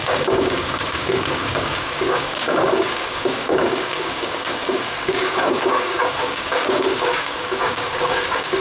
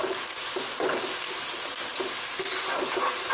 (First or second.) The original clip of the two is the second